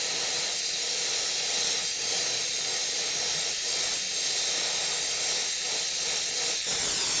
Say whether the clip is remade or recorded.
recorded